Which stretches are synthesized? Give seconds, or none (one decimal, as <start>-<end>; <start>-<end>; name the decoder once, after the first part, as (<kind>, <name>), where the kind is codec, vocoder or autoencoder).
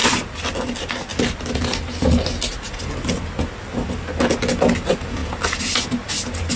none